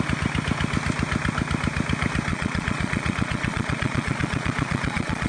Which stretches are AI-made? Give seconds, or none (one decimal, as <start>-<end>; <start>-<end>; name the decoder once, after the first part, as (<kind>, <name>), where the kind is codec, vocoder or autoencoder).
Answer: 2.3-5.3 (vocoder, Vocos)